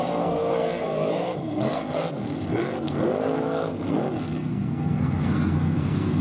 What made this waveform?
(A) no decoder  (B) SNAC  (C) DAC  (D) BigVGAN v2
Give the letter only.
B